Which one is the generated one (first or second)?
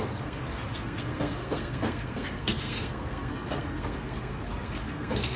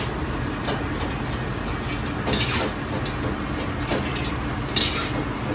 first